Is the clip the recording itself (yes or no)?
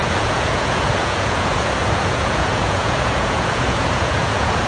no